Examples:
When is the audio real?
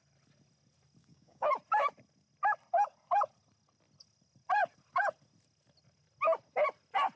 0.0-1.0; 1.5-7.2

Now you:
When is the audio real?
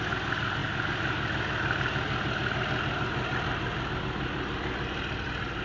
0.0-5.6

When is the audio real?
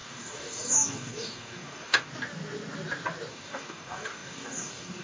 2.1-3.3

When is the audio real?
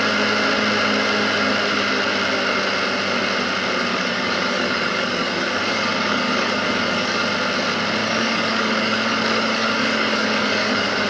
0.0-3.9; 7.2-8.0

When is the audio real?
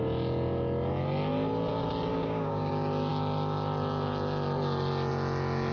0.0-2.1; 2.7-5.7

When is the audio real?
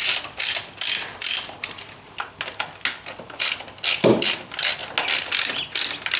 0.0-6.2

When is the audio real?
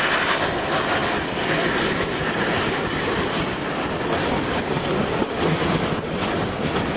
0.0-7.0